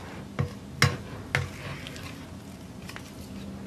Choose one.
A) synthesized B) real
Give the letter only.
B